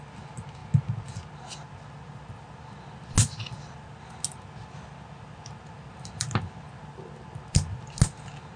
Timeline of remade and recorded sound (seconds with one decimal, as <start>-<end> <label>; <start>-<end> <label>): 0.0-8.6 recorded